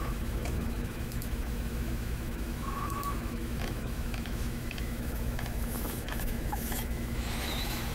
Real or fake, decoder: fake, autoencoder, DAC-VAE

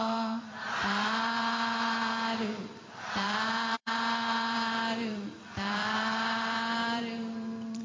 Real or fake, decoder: fake, vocoder, BigVGAN v2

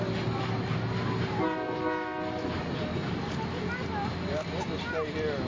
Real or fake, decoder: real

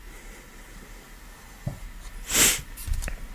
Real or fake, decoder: real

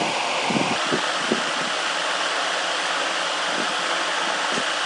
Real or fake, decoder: real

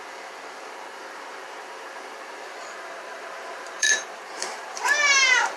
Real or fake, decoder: fake, vocoder, BigVGAN v2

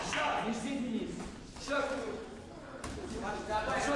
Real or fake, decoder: real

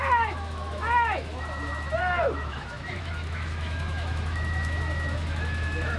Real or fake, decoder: fake, autoencoder, DAC-VAE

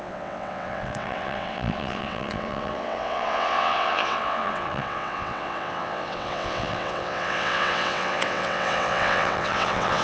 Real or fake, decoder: fake, vocoder, WaveNeXt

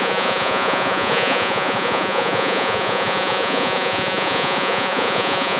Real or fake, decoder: fake, vocoder, Vocos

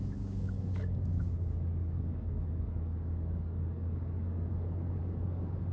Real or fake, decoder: fake, codec, DAC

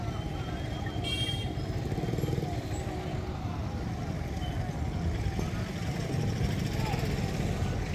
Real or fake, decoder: real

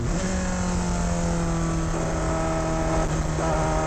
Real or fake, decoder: real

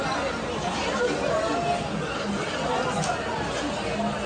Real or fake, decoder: real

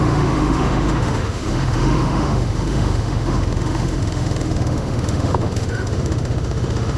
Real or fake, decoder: fake, autoencoder, DAC-VAE